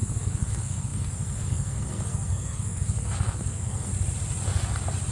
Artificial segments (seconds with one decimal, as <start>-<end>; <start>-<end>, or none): 0.0-3.9